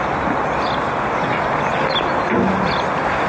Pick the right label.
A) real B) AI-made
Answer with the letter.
A